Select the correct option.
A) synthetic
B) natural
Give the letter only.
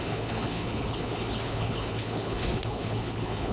A